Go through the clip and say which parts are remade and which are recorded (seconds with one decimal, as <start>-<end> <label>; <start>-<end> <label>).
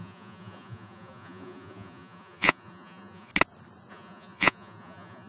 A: 0.0-3.3 remade; 3.3-3.9 recorded; 3.9-5.3 remade